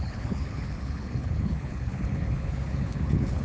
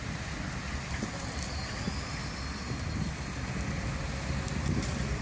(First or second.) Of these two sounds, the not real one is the first